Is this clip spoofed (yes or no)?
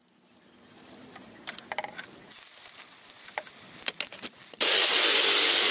yes